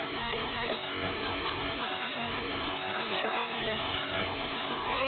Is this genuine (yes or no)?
no